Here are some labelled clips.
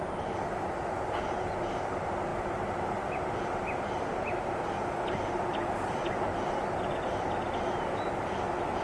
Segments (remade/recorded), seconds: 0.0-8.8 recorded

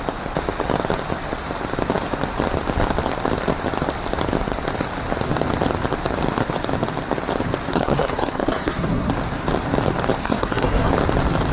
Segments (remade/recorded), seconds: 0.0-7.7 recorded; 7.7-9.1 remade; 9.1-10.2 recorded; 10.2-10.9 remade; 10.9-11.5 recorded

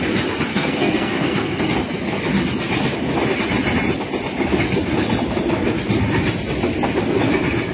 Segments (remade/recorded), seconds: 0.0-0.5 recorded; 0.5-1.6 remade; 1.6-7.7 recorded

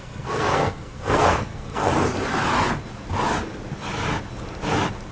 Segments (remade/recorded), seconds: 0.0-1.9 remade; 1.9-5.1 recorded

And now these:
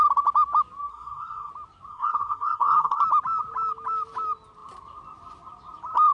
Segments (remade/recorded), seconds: 0.0-0.9 recorded; 0.9-1.5 remade; 1.5-1.9 recorded; 1.9-3.0 remade; 3.0-6.1 recorded

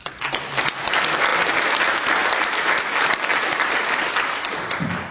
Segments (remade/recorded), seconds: 0.0-5.1 recorded